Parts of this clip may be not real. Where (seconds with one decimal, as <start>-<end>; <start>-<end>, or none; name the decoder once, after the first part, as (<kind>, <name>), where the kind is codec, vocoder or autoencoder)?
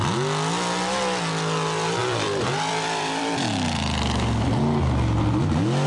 2.0-4.6 (vocoder, BigVGAN v2)